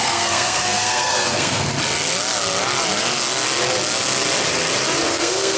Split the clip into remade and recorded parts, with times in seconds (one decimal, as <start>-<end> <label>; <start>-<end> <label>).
0.0-1.7 remade; 1.7-5.1 recorded; 5.1-5.6 remade